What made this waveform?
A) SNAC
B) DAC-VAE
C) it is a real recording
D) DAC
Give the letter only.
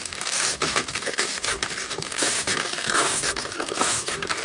D